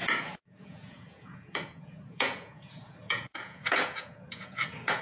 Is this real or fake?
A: fake